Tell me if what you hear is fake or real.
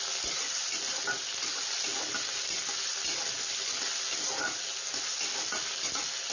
real